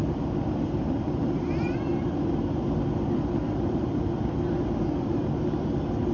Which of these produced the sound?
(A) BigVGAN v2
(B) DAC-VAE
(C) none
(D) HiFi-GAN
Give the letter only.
A